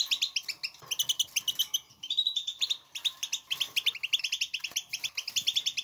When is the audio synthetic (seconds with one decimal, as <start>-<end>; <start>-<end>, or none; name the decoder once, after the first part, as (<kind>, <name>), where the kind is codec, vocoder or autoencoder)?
1.6-2.7 (vocoder, BigVGAN v2)